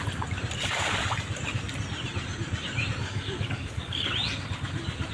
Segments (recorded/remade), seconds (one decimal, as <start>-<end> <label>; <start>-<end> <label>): 0.0-3.0 recorded; 3.0-4.1 remade; 4.1-5.1 recorded

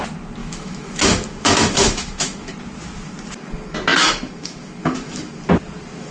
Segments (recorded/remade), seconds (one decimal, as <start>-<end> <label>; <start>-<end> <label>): 0.0-0.4 recorded; 0.4-2.5 remade; 2.5-3.9 recorded; 3.9-5.3 remade; 5.3-6.1 recorded